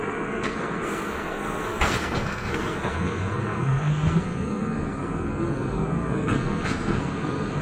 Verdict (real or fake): fake